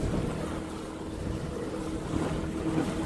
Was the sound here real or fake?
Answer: real